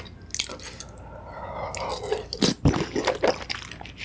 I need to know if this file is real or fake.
real